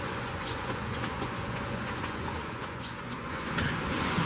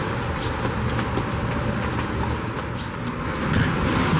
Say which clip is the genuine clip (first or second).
second